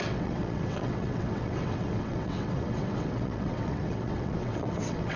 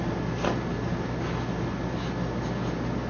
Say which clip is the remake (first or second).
first